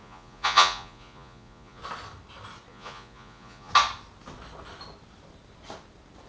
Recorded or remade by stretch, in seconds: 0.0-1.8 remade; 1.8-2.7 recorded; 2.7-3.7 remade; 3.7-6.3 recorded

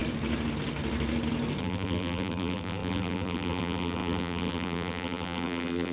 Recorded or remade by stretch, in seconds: 0.0-1.6 recorded; 1.6-5.9 remade

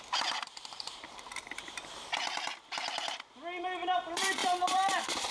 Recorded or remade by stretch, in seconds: 0.0-1.3 remade; 1.3-3.6 recorded; 3.6-5.3 remade